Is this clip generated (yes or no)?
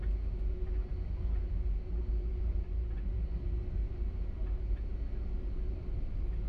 no